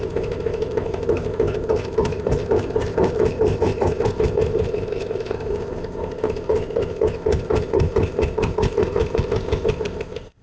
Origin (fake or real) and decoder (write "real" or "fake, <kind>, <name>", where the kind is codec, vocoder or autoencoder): fake, codec, ZipCodec